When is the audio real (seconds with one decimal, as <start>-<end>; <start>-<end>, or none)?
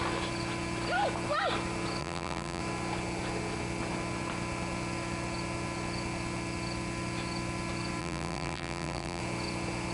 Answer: 0.0-2.0; 2.6-8.0; 9.2-9.9